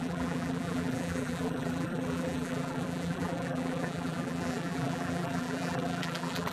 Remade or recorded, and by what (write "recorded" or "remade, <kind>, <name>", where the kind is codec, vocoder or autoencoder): remade, vocoder, BigVGAN v2